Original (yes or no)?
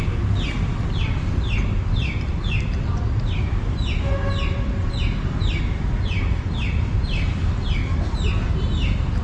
yes